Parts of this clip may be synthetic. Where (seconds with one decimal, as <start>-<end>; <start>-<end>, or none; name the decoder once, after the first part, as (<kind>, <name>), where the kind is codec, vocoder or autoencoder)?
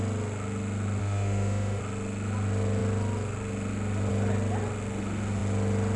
1.0-1.8 (autoencoder, DAC-VAE)